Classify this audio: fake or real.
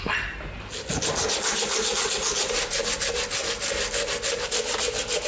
real